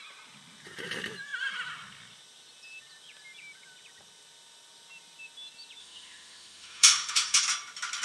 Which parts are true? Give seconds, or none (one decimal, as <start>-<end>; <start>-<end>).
0.0-5.8; 7.4-8.0